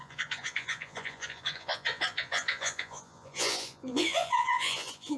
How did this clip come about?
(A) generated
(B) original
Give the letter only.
A